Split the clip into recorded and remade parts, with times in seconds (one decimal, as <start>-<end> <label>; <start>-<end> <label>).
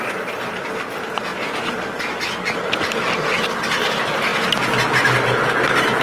0.0-6.0 recorded